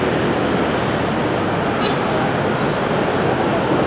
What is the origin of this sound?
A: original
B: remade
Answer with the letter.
A